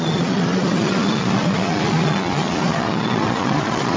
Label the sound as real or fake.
fake